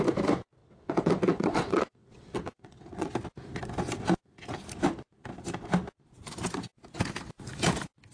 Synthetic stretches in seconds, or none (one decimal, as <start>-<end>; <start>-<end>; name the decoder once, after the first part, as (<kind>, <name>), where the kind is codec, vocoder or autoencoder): 0.6-3.1 (vocoder, WaveNeXt)